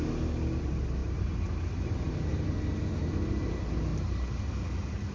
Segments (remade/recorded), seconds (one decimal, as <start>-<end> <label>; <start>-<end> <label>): 0.0-1.0 recorded; 1.0-2.3 remade; 2.3-3.9 recorded; 3.9-4.5 remade; 4.5-5.1 recorded